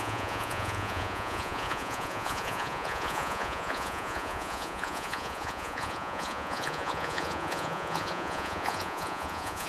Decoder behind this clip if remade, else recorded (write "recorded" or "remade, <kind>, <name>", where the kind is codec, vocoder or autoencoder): remade, vocoder, Vocos